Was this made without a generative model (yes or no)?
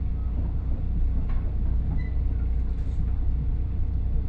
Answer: yes